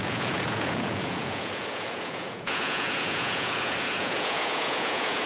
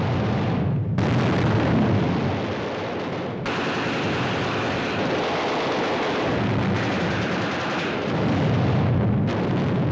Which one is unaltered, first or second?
second